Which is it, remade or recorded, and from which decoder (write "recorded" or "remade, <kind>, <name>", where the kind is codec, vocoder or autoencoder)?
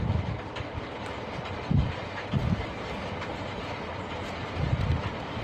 recorded